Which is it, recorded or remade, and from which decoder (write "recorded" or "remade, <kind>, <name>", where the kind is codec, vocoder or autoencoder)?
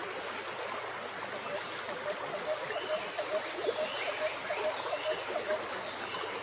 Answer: recorded